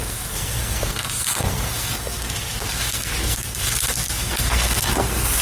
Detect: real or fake fake